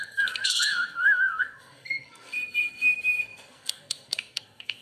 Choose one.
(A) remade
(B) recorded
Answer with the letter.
A